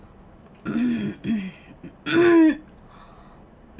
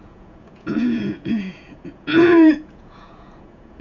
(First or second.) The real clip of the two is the first